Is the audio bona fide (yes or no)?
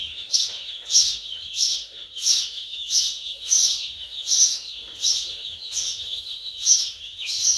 no